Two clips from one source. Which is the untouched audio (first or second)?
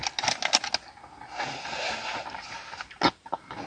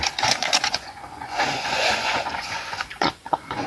first